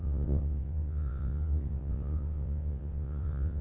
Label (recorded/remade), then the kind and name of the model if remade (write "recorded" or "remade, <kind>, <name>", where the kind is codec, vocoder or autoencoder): remade, vocoder, WaveNeXt